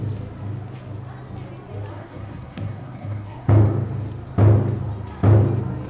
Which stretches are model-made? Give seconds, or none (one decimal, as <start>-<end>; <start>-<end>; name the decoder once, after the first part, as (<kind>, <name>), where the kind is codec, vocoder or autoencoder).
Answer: 1.9-3.5 (codec, SNAC)